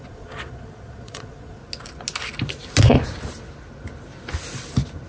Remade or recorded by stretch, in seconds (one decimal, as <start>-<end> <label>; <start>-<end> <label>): 0.0-1.6 remade; 1.6-5.1 recorded